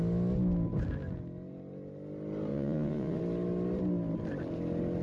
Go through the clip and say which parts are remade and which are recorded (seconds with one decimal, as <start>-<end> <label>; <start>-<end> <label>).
0.0-2.5 recorded; 2.5-3.2 remade; 3.2-5.0 recorded